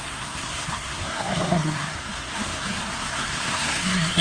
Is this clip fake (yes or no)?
yes